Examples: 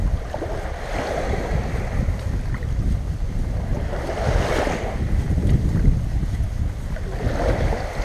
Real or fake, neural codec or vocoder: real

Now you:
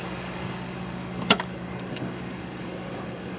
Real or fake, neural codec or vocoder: fake, codec, DAC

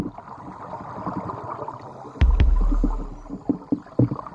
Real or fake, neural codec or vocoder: real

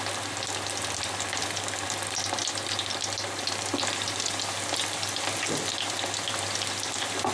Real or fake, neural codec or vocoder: real